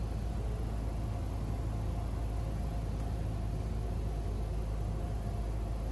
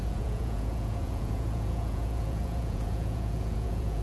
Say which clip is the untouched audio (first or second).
first